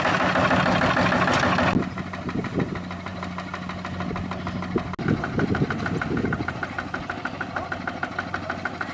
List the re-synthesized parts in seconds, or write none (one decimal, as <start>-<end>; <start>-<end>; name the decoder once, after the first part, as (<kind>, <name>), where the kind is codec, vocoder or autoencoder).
none